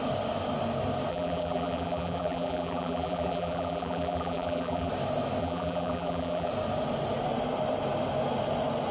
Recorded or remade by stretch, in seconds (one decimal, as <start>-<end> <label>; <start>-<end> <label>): 0.0-1.1 recorded; 1.1-4.9 remade; 4.9-5.4 recorded; 5.4-6.5 remade; 6.5-8.9 recorded